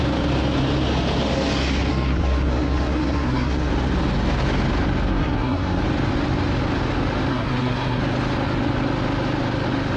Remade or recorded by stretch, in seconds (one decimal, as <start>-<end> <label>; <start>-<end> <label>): 0.0-1.9 recorded; 1.9-3.7 remade; 3.7-5.1 recorded; 5.1-5.8 remade; 5.8-7.3 recorded; 7.3-8.0 remade; 8.0-10.0 recorded